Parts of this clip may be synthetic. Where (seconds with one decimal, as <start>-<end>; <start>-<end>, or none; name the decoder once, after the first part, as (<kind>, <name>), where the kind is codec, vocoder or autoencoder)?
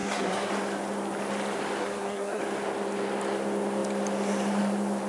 0.0-0.5 (codec, SNAC); 1.8-2.4